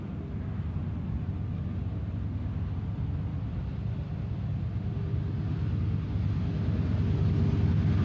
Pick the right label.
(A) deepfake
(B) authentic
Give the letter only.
B